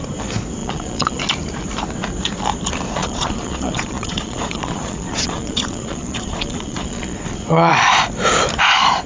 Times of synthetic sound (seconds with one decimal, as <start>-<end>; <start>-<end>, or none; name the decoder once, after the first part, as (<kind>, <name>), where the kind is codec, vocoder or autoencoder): 0.6-1.2 (vocoder, Vocos); 3.0-7.7